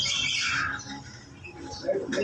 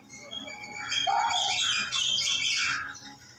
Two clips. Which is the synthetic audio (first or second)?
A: first